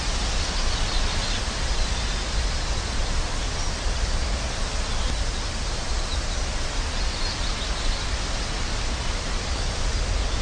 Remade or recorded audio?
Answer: recorded